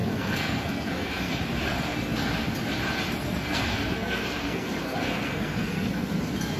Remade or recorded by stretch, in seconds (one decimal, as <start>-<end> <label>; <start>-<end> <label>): 0.0-1.4 remade; 1.4-3.2 recorded; 3.2-6.1 remade; 6.1-6.6 recorded